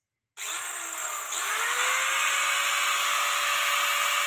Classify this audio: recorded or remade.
recorded